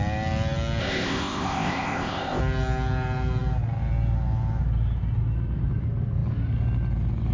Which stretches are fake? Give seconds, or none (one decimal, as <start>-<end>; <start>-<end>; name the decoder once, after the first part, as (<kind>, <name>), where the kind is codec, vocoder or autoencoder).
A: 0.8-2.4 (codec, ZipCodec)